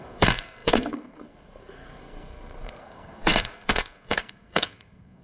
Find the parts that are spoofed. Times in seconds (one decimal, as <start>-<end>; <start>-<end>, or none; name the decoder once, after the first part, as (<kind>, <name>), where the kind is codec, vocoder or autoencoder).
0.0-5.2 (codec, SNAC)